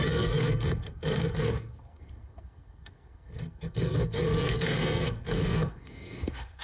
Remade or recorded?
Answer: remade